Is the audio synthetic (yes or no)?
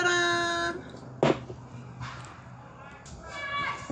no